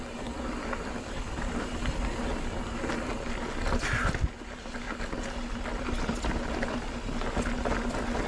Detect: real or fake real